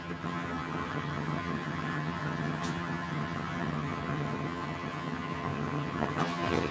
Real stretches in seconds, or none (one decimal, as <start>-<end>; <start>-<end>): none